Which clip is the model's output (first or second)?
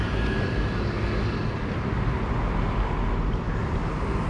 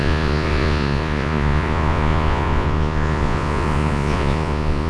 second